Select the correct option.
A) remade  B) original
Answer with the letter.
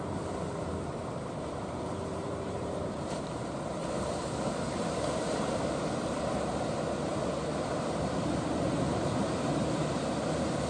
A